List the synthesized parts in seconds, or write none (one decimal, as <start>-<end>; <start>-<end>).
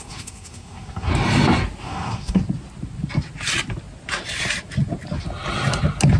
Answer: 0.0-1.1; 1.8-2.4